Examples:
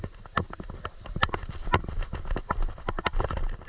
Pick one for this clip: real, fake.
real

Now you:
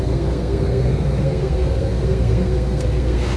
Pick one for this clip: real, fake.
fake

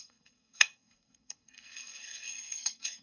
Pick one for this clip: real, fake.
fake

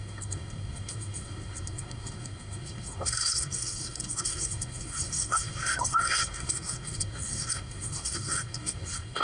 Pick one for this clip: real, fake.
fake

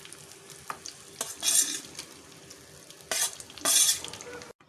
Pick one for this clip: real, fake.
real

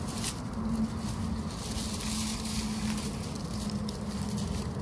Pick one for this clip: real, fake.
real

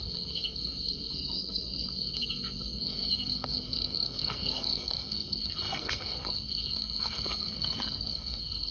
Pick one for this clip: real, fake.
fake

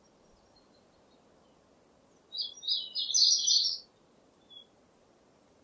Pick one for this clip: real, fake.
real